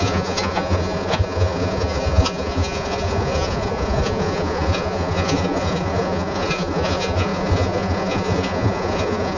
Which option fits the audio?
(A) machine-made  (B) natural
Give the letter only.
A